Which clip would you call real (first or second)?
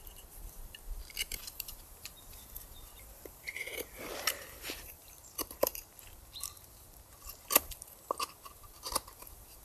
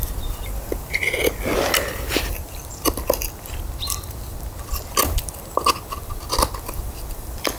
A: second